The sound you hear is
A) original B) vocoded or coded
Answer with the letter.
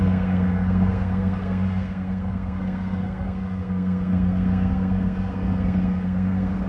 B